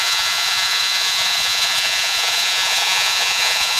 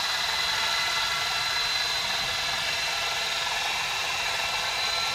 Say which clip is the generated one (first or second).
first